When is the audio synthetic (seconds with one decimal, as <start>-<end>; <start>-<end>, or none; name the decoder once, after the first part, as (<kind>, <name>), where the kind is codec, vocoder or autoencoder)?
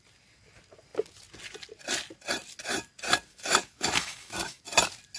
3.3-4.6 (autoencoder, DAC-VAE)